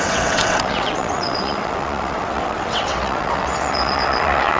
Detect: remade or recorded remade